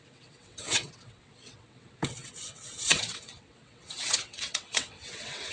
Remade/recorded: remade